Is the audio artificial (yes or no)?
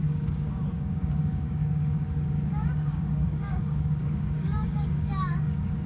yes